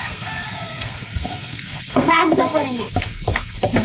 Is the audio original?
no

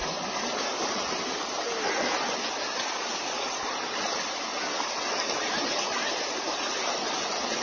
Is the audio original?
yes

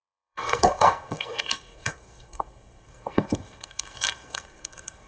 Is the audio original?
no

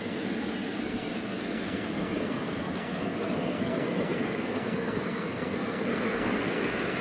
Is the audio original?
no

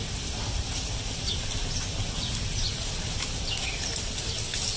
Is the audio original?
yes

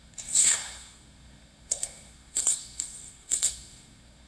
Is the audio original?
no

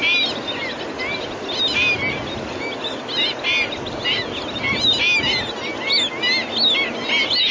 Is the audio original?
yes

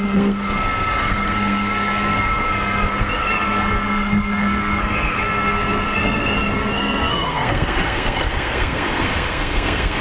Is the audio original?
no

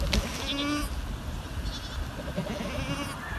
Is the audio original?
yes